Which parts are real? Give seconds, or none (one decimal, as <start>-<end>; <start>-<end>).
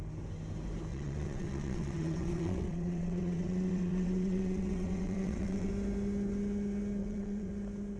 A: 0.0-0.9; 5.7-7.0; 7.5-8.0